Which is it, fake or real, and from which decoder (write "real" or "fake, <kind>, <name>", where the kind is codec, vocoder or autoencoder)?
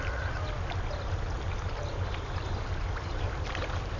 real